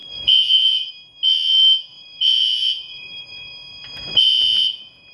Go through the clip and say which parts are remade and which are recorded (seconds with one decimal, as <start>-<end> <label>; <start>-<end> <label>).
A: 0.0-0.9 remade; 0.9-1.9 recorded; 1.9-5.1 remade